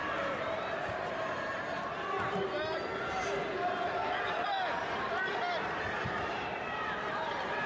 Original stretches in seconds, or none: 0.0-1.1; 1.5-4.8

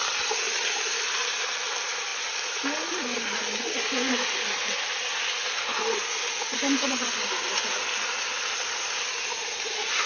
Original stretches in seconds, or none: 0.0-10.1

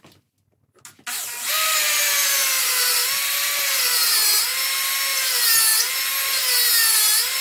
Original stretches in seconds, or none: 0.0-2.8; 3.8-7.4

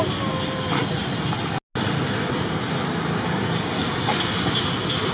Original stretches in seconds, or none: 0.0-5.1

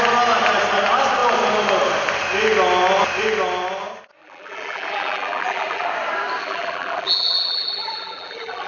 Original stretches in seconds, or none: 0.0-4.2; 5.9-6.4

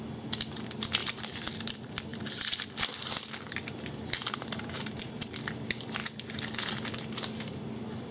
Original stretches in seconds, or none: 0.0-1.0; 1.7-2.1; 2.6-4.2; 5.2-8.1